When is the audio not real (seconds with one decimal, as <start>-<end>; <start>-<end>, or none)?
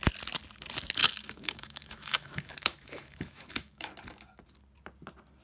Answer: 1.0-3.9